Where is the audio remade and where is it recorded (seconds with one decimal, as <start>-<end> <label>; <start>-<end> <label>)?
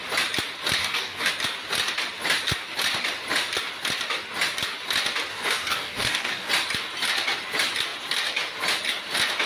0.0-0.8 recorded; 0.8-1.3 remade; 1.3-5.3 recorded; 5.3-6.5 remade; 6.5-9.5 recorded